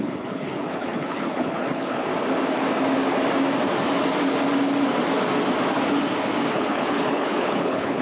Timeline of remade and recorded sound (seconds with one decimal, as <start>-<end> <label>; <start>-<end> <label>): 0.0-2.1 remade; 2.1-6.5 recorded; 6.5-8.0 remade